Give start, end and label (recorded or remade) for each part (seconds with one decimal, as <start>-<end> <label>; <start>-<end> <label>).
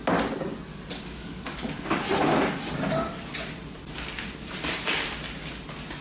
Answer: 0.0-0.7 recorded; 0.7-2.0 remade; 2.0-6.0 recorded